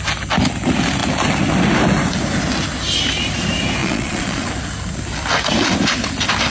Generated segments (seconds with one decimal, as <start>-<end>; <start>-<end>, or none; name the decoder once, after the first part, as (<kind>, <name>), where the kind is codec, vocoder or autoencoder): 3.8-4.5 (vocoder, Vocos)